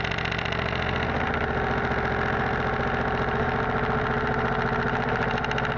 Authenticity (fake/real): real